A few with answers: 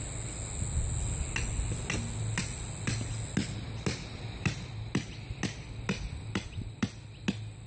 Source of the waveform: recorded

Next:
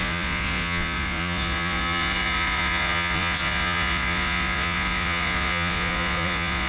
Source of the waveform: remade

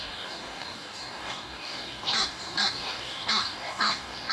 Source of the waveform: remade